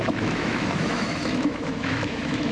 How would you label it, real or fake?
fake